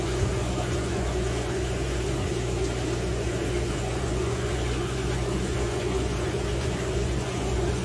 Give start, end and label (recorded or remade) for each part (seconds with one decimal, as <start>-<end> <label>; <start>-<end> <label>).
0.0-2.3 remade; 2.3-3.1 recorded; 3.1-7.8 remade

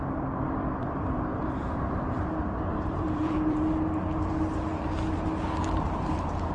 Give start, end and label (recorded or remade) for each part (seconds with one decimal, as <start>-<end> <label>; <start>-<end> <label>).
0.0-0.8 recorded; 0.8-3.6 remade; 3.6-6.5 recorded

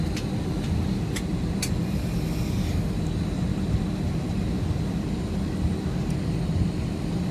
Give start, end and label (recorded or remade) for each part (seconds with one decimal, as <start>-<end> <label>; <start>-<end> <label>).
0.0-7.3 recorded

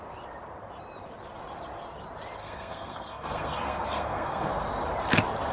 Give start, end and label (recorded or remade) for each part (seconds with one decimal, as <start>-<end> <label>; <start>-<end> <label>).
0.0-2.4 recorded; 2.4-4.5 remade; 4.5-5.5 recorded

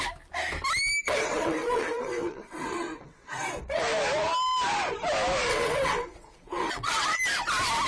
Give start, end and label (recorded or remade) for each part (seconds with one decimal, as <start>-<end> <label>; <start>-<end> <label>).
0.0-1.0 recorded; 1.0-3.8 remade; 3.8-5.5 recorded; 5.5-7.2 remade; 7.2-7.9 recorded

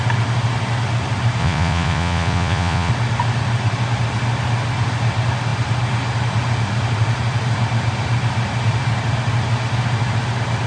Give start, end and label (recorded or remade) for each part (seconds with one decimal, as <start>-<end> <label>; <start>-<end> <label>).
0.0-1.4 recorded; 1.4-2.9 remade; 2.9-10.7 recorded

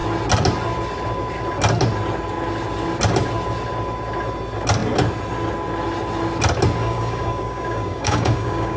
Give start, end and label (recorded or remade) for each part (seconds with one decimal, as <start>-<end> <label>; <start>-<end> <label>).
0.0-6.8 recorded; 6.8-8.8 remade